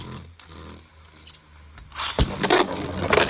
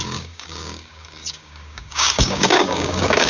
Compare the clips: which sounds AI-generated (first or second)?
second